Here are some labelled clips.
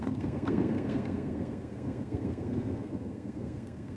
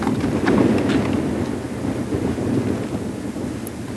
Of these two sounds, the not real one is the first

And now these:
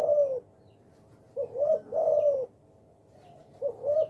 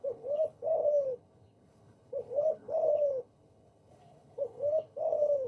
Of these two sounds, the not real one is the second